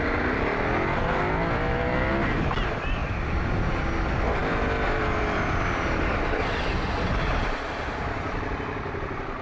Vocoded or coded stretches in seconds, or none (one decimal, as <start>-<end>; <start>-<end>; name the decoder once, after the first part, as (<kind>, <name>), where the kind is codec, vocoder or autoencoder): 3.0-3.7 (vocoder, BigVGAN v2); 4.4-6.1